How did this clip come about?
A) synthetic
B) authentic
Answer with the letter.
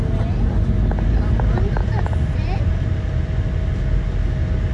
B